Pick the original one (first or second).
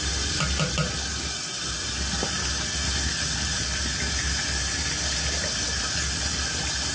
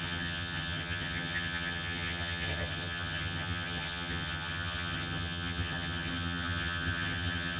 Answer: first